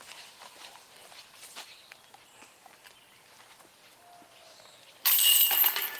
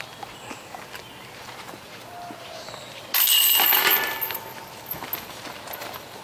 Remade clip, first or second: first